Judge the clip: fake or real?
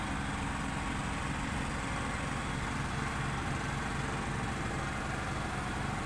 real